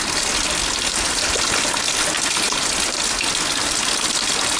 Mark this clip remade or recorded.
recorded